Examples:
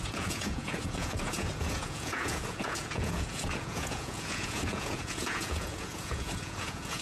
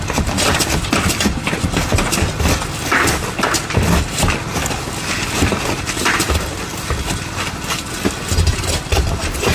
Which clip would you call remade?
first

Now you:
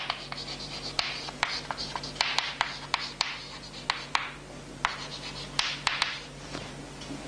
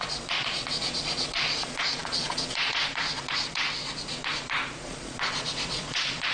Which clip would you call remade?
second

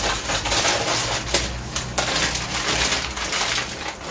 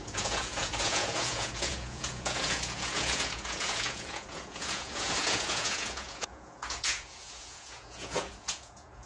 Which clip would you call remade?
second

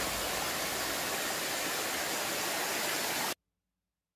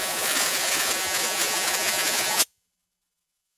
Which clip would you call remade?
second